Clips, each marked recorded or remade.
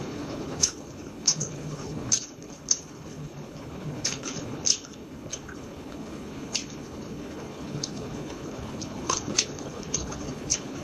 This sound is remade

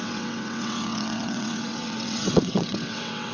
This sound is remade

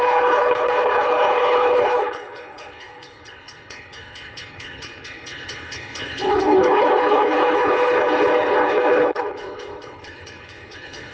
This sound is remade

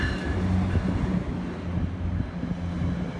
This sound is recorded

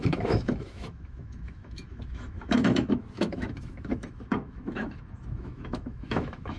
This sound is remade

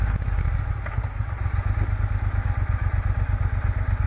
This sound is recorded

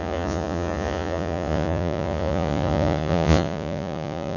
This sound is remade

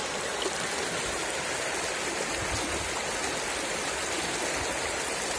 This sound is recorded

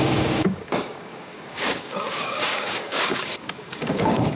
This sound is remade